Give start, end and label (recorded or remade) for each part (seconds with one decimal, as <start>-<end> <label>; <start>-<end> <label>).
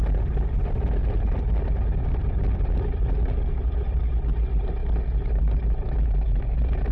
0.0-6.9 recorded